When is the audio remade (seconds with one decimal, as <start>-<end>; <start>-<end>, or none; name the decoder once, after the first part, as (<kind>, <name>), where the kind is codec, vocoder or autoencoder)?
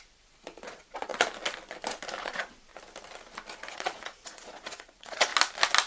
0.0-1.1 (vocoder, Vocos); 2.2-2.7; 3.7-5.3